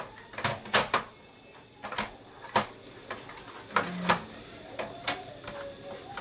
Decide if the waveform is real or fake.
real